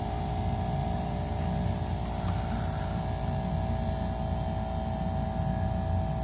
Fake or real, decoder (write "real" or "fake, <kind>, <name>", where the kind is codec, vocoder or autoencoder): real